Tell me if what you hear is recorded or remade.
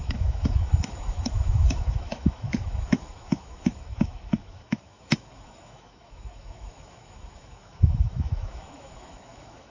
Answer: remade